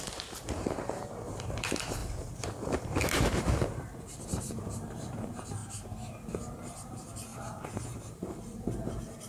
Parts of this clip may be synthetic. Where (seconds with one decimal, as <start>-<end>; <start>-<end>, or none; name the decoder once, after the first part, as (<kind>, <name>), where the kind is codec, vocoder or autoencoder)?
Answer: 0.0-5.6 (vocoder, BigVGAN v2); 6.6-9.3